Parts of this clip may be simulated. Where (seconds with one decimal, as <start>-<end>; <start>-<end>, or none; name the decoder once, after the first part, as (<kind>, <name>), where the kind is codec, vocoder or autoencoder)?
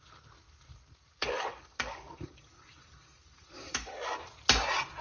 1.2-3.9 (codec, DAC)